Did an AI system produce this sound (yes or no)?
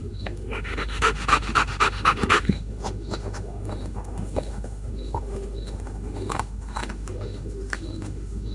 yes